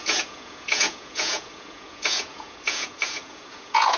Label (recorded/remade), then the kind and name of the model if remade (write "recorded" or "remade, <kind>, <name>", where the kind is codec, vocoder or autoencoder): remade, vocoder, Vocos